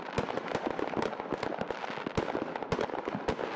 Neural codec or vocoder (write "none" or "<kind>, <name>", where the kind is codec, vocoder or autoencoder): none